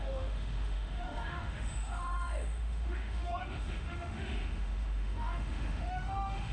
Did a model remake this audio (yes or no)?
yes